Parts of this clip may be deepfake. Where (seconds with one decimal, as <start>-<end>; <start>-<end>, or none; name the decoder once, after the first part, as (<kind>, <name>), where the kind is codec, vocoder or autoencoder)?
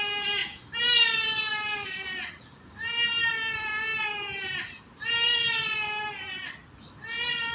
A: none